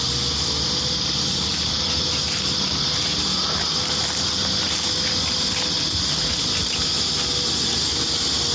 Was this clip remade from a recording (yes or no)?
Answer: no